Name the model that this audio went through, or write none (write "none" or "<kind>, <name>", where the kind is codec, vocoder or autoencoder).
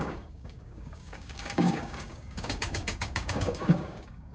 codec, DAC